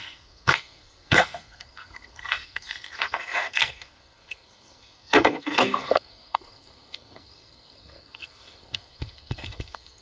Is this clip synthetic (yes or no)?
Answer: yes